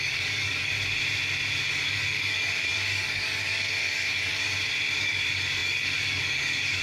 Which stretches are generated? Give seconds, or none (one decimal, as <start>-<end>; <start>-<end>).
0.0-0.7; 1.7-4.5; 5.0-6.8